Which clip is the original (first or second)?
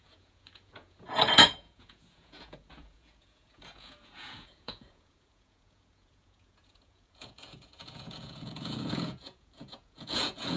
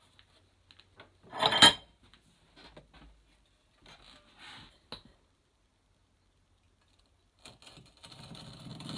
second